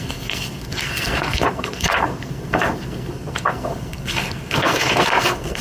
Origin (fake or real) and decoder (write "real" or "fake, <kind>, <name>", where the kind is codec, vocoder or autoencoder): fake, codec, SNAC